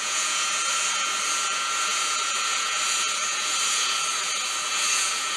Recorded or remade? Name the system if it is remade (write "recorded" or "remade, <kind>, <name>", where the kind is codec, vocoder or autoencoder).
remade, vocoder, Vocos